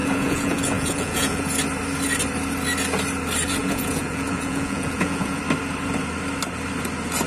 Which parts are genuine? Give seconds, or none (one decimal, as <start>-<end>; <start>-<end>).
1.5-3.6; 5.4-7.3